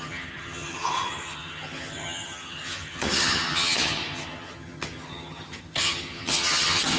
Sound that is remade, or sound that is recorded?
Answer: remade